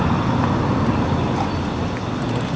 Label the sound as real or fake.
real